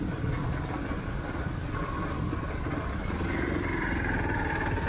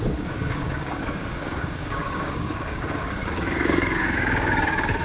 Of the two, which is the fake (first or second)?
second